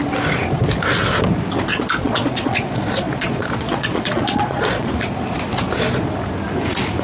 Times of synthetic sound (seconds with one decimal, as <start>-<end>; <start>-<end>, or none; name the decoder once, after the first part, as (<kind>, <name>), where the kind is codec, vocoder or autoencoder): 1.7-4.9 (vocoder, Vocos)